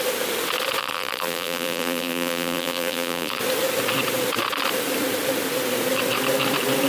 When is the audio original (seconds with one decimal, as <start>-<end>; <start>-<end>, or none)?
0.0-0.8; 3.4-6.9